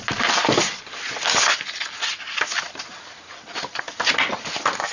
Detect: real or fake real